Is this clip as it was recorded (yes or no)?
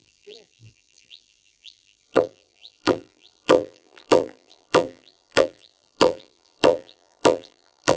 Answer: no